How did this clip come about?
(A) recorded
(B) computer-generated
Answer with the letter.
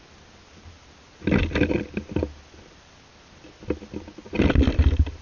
A